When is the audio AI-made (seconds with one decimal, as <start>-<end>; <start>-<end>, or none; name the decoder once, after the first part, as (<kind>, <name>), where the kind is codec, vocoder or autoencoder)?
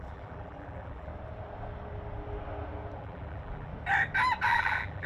0.0-1.1 (vocoder, BigVGAN v2); 3.0-3.7; 4.5-5.1